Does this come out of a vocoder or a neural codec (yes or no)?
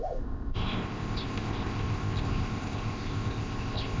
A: yes